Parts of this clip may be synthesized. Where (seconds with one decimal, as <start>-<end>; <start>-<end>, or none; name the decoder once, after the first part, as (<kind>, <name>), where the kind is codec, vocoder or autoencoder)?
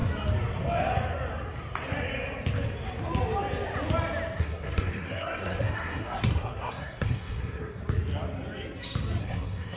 4.4-7.8 (codec, SNAC); 9.2-9.8